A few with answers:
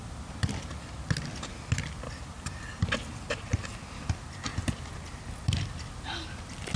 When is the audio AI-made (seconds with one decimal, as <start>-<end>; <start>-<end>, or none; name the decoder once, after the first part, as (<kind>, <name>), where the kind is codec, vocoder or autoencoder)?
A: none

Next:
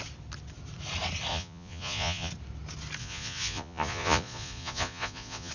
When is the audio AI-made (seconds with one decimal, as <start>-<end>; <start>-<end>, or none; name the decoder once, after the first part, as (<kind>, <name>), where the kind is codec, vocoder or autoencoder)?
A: 1.3-2.3 (vocoder, Vocos); 3.0-5.5

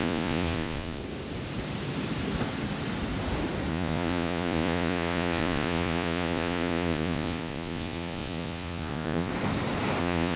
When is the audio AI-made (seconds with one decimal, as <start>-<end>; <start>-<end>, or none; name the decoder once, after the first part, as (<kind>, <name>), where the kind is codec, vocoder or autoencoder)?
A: 0.0-1.0 (vocoder, Vocos); 3.7-9.3; 10.0-10.4

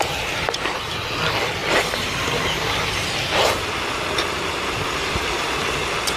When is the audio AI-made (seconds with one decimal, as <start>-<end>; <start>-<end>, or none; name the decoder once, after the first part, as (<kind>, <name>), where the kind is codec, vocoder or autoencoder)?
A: none